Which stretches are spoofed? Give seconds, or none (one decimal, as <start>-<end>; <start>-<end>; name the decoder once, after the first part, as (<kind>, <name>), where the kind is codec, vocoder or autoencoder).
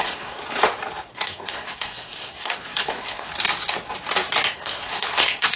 0.0-0.4 (codec, SNAC); 1.1-3.3; 4.5-5.6